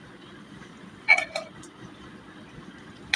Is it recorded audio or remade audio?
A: remade